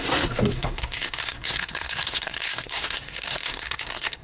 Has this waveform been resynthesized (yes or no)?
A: yes